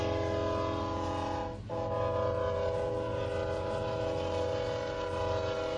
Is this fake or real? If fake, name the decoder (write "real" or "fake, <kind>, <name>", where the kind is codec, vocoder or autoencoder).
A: real